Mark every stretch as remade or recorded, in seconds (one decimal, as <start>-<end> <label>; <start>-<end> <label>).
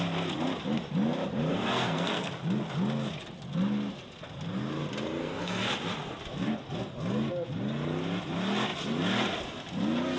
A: 0.0-1.5 recorded; 1.5-2.3 remade; 2.3-5.2 recorded; 5.2-5.7 remade; 5.7-10.2 recorded